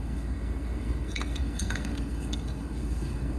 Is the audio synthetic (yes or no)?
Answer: yes